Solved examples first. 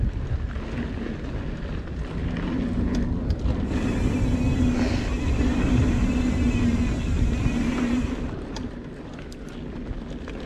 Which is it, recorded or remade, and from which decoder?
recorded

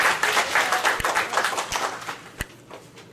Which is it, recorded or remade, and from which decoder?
recorded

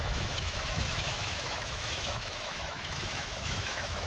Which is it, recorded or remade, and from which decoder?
remade, autoencoder, DAC-VAE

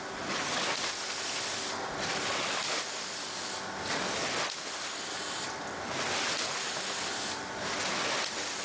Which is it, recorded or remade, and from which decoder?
recorded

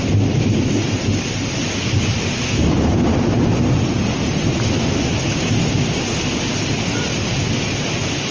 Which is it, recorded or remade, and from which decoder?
recorded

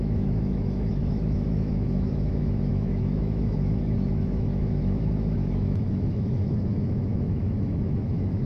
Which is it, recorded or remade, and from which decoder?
remade, autoencoder, DAC-VAE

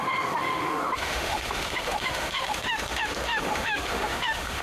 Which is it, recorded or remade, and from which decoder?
remade, autoencoder, DAC-VAE